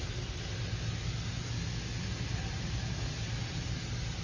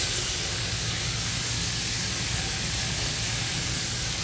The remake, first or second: second